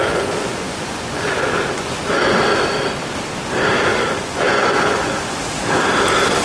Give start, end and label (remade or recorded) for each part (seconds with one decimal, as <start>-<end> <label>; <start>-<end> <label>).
0.0-2.4 remade; 2.4-3.9 recorded; 3.9-5.4 remade; 5.4-6.4 recorded